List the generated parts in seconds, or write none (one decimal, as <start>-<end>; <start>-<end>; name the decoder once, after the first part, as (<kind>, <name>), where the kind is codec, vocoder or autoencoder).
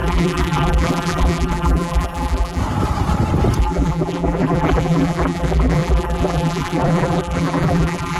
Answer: 0.0-2.6 (vocoder, BigVGAN v2); 3.6-8.2